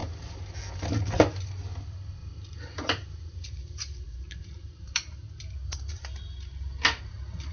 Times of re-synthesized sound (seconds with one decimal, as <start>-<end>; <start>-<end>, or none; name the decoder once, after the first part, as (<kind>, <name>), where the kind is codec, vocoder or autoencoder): 2.2-5.3 (vocoder, BigVGAN v2)

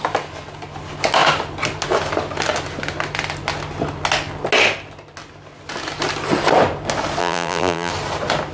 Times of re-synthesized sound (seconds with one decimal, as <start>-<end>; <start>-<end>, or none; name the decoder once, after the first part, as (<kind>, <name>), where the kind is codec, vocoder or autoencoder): 7.2-7.9 (vocoder, BigVGAN v2)

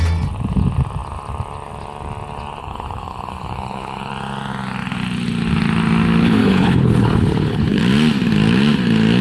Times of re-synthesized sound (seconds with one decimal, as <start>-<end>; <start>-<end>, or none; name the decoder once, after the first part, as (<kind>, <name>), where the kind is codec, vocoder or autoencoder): 2.6-4.1 (codec, HILCodec); 6.4-7.8

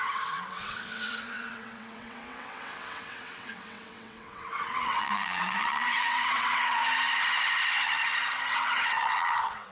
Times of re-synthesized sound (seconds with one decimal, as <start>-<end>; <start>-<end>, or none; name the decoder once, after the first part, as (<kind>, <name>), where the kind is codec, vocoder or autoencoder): 0.0-6.8 (vocoder, WaveNeXt); 8.5-9.7